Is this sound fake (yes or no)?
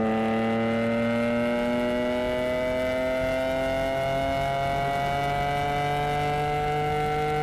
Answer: no